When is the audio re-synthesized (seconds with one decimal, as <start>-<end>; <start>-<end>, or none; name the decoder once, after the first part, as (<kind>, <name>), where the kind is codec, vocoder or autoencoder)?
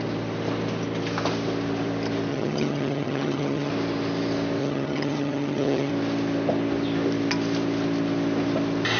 2.3-3.7 (vocoder, HiFi-GAN); 4.6-5.9